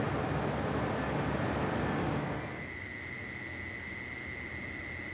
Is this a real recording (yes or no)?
yes